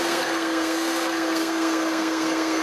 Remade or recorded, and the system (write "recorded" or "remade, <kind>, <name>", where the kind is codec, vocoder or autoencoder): remade, codec, SNAC